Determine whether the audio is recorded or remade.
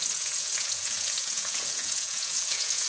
remade